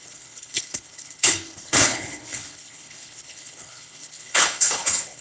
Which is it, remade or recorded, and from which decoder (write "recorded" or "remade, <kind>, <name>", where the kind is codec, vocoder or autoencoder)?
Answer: remade, codec, HILCodec